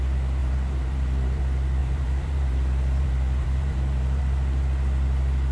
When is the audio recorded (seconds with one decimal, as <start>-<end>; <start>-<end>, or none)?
0.0-0.4; 1.4-1.8; 4.2-5.5